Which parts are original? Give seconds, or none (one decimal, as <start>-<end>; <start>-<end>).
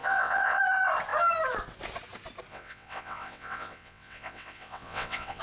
0.6-2.5